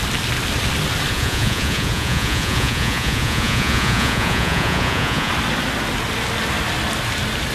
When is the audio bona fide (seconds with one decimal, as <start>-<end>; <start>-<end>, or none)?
0.0-1.1; 5.3-7.5